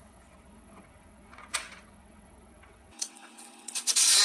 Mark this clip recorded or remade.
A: remade